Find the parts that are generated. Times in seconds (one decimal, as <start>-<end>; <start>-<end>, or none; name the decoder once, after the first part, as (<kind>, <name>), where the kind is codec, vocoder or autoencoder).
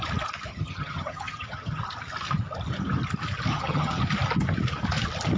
0.5-1.8 (vocoder, HiFi-GAN); 3.5-4.0